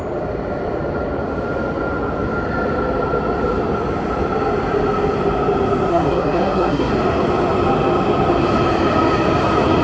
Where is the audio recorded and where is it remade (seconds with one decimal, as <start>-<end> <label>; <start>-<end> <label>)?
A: 0.0-5.9 recorded; 5.9-6.9 remade; 6.9-9.8 recorded